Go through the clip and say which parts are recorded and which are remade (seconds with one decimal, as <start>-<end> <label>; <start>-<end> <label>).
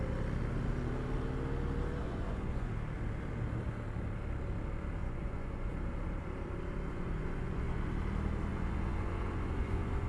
0.0-2.0 recorded; 2.0-2.7 remade; 2.7-5.0 recorded; 5.0-5.7 remade; 5.7-6.9 recorded; 6.9-7.9 remade; 7.9-8.5 recorded; 8.5-10.1 remade